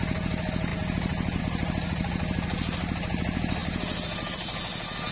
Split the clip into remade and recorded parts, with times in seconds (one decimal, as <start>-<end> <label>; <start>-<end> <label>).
0.0-5.1 recorded